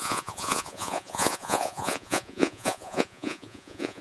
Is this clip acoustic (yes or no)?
no